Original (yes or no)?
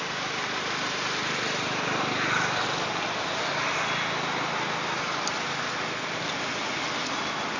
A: yes